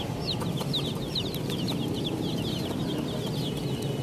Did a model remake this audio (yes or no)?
no